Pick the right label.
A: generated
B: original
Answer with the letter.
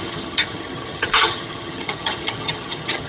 A